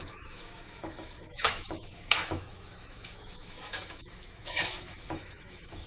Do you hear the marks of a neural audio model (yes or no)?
yes